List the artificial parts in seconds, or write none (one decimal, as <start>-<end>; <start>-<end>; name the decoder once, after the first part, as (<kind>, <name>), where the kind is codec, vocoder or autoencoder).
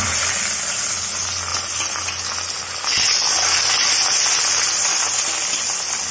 none